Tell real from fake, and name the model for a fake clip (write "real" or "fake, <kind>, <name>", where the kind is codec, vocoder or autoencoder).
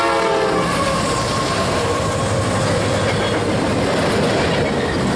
real